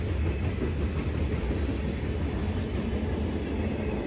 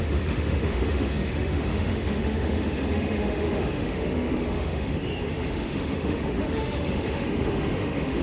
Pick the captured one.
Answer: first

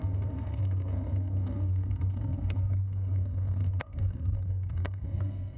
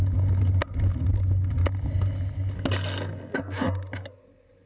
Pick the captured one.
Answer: second